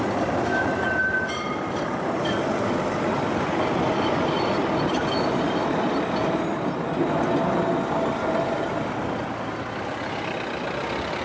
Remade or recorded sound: recorded